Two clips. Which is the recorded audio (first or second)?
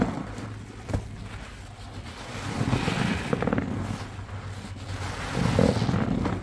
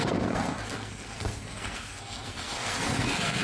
first